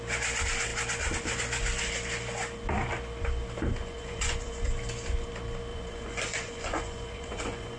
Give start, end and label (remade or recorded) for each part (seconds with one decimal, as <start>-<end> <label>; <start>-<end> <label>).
0.0-3.8 recorded; 3.8-4.7 remade; 4.7-5.7 recorded; 5.7-7.8 remade